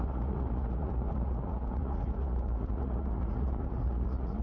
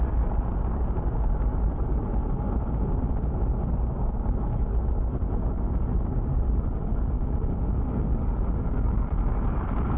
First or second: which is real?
second